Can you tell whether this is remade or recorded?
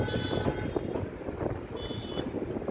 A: recorded